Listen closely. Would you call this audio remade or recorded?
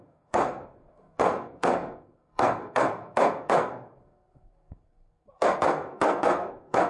remade